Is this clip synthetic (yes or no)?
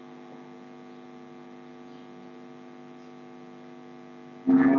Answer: no